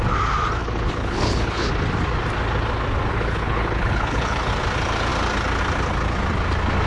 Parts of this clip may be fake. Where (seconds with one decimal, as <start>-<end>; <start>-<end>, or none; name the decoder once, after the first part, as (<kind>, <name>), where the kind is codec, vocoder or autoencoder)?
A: 0.6-1.7 (codec, HILCodec); 3.1-4.5